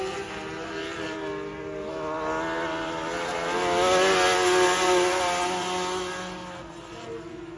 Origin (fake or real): real